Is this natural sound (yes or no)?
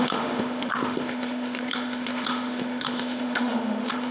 no